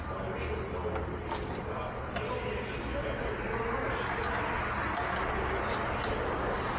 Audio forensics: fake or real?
real